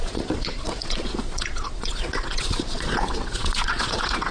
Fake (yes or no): yes